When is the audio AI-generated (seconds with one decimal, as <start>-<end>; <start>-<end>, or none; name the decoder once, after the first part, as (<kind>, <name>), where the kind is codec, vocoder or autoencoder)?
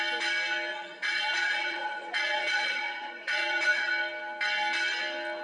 0.7-3.9 (vocoder, Vocos)